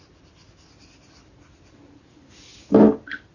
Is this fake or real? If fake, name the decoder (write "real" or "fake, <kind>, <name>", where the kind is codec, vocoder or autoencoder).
real